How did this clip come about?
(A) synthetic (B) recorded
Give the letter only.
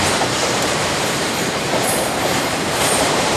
A